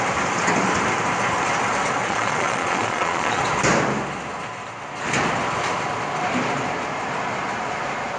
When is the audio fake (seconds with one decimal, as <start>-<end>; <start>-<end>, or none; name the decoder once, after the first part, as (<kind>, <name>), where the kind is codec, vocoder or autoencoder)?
2.0-3.4 (vocoder, Vocos)